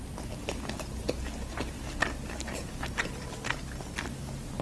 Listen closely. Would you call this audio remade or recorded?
recorded